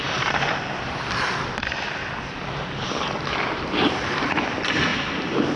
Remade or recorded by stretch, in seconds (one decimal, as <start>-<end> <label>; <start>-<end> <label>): 0.0-2.0 remade; 2.0-3.3 recorded; 3.3-4.9 remade; 4.9-5.6 recorded

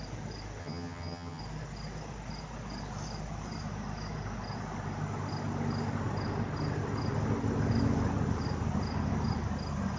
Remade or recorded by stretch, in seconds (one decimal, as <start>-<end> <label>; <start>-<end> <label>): 0.0-0.6 recorded; 0.6-1.4 remade; 1.4-10.0 recorded